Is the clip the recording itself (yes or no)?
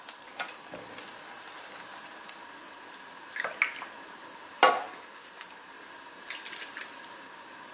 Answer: yes